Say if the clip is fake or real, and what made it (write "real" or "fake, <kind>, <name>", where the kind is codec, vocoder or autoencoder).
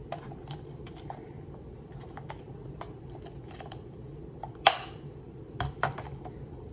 fake, vocoder, BigVGAN v2